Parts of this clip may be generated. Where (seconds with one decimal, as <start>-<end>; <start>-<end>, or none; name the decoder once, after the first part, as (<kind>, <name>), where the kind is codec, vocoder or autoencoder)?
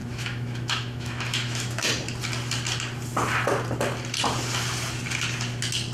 0.0-1.9 (autoencoder, DAC-VAE)